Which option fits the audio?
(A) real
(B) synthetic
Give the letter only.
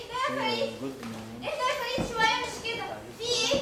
A